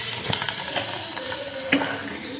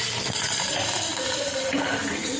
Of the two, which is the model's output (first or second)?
second